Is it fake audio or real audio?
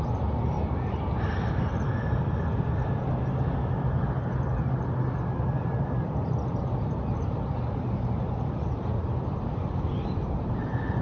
real